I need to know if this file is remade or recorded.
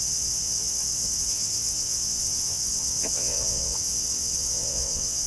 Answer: remade